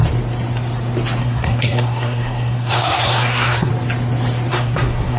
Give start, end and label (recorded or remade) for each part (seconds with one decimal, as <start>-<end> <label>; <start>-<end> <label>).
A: 0.0-1.2 recorded; 1.2-3.7 remade; 3.7-4.5 recorded; 4.5-5.2 remade